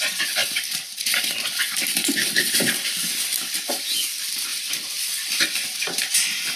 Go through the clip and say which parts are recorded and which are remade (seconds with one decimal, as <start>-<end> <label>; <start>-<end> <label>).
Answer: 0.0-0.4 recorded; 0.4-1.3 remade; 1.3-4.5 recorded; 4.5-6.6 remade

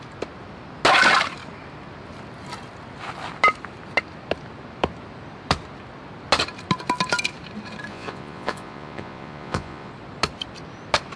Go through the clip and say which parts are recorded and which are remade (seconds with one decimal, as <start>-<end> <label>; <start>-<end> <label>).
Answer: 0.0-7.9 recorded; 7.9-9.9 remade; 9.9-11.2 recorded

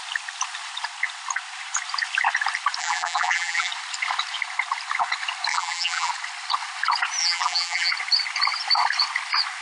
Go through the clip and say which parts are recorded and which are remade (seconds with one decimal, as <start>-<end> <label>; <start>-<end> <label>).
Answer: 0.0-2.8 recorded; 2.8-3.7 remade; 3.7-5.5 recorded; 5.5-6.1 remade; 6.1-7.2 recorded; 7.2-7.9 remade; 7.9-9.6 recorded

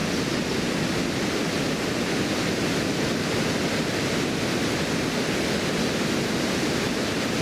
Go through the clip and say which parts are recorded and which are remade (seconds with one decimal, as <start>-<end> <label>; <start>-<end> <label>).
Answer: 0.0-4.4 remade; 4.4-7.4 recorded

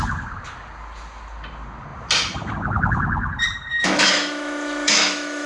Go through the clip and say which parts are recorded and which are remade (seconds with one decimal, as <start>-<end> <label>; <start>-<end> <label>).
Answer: 0.0-3.7 recorded; 3.7-5.5 remade